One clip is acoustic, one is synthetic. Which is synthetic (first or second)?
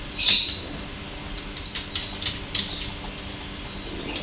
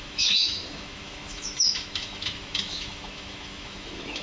second